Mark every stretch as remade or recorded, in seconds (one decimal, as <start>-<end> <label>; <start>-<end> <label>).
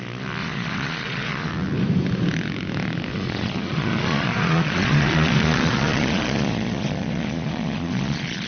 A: 0.0-0.4 recorded; 0.4-1.5 remade; 1.5-3.1 recorded; 3.1-8.5 remade